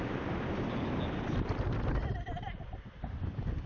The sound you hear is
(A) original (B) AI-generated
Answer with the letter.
A